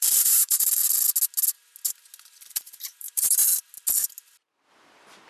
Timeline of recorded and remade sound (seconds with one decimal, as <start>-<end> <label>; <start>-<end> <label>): 0.0-0.8 remade; 0.8-2.5 recorded; 2.5-3.4 remade; 3.4-5.3 recorded